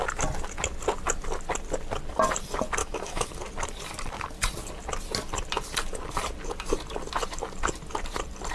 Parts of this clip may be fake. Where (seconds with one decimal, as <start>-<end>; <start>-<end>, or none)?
2.8-3.3